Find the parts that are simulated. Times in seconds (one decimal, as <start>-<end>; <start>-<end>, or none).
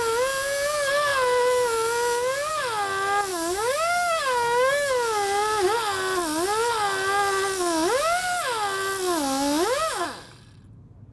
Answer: 3.3-4.9